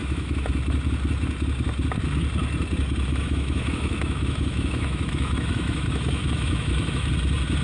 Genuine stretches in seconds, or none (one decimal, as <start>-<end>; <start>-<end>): 0.5-3.1; 7.1-7.6